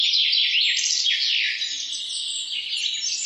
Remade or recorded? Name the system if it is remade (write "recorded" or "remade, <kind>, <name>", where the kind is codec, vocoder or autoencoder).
recorded